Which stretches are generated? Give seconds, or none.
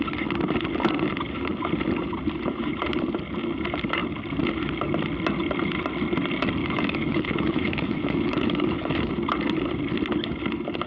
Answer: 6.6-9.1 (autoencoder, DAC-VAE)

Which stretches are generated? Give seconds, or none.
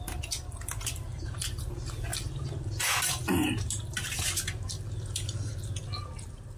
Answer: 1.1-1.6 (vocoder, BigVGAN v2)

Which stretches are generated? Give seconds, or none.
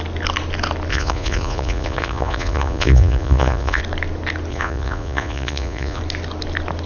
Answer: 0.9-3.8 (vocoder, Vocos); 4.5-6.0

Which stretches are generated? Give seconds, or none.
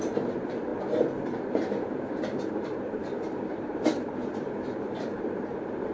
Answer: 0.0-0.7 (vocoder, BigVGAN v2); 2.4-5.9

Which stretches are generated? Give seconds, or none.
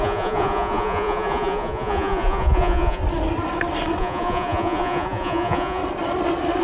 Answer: 0.0-3.0 (vocoder, Vocos); 4.0-5.8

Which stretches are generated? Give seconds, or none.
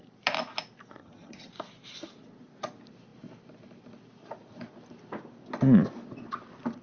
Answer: 1.0-1.5 (vocoder, HiFi-GAN)